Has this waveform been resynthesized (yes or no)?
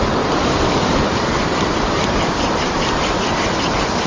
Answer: yes